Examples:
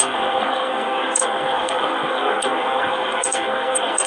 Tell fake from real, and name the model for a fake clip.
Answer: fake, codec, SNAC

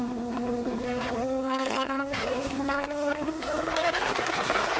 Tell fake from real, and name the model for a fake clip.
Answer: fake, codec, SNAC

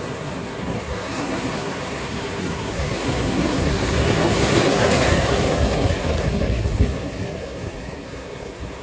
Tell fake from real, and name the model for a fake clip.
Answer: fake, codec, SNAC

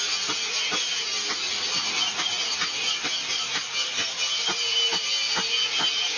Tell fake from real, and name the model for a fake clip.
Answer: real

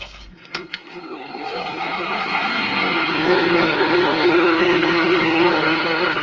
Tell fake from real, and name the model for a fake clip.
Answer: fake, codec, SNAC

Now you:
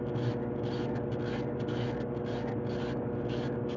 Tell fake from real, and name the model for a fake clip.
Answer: real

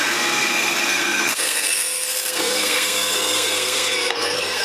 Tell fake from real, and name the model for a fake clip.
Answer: fake, codec, SNAC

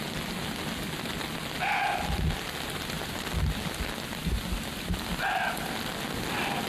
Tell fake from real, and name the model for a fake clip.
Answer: real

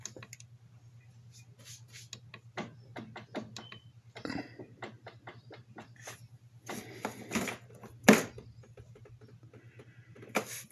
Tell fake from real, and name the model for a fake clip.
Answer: real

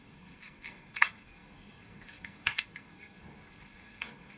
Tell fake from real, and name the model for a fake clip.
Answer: fake, codec, SNAC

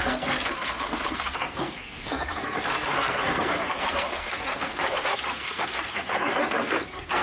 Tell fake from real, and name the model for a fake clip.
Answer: fake, codec, SNAC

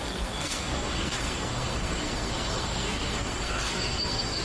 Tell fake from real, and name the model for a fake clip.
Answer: fake, codec, SNAC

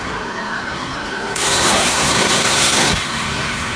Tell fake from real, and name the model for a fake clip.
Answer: fake, codec, SNAC